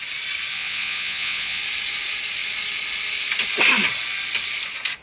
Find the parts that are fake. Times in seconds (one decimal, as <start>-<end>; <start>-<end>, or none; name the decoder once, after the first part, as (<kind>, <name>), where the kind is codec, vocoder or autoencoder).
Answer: 0.5-1.6 (vocoder, Vocos)